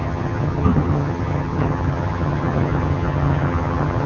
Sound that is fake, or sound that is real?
fake